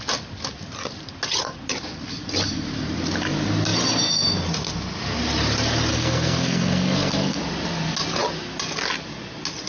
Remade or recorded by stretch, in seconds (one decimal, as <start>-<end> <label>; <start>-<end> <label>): 0.0-5.9 recorded; 5.9-7.4 remade; 7.4-9.7 recorded